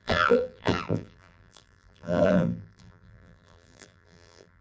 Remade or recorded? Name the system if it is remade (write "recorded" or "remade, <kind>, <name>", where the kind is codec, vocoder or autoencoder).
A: remade, vocoder, BigVGAN v2